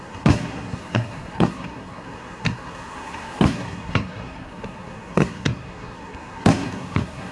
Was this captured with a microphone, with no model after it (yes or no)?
no